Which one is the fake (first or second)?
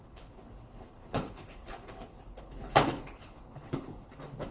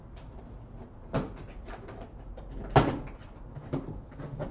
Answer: first